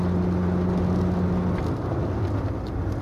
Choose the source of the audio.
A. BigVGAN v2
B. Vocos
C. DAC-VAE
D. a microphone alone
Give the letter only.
D